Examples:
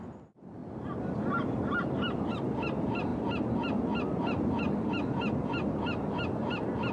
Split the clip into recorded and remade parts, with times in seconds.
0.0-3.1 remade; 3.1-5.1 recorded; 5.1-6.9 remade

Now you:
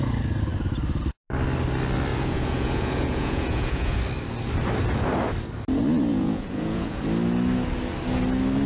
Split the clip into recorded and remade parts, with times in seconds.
0.0-2.1 recorded; 2.1-4.0 remade; 4.0-6.1 recorded; 6.1-7.0 remade; 7.0-8.7 recorded

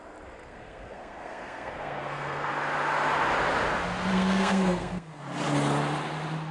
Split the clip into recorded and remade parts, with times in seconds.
0.0-0.4 recorded; 0.4-2.5 remade; 2.5-4.1 recorded; 4.1-5.2 remade; 5.2-6.5 recorded

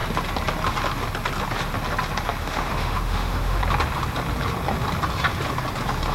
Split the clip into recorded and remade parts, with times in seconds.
0.0-2.4 recorded; 2.4-3.6 remade; 3.6-6.1 recorded